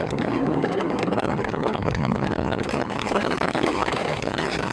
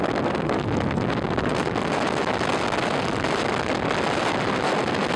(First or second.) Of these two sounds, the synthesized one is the first